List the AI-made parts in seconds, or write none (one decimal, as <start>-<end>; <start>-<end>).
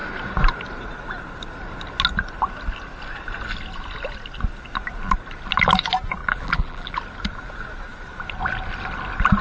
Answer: 6.2-7.0